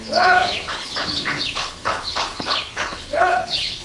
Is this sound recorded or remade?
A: remade